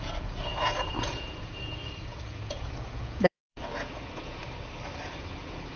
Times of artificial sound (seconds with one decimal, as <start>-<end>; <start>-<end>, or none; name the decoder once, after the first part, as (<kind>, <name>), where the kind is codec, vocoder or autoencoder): 0.0-4.4 (vocoder, Vocos); 5.1-5.8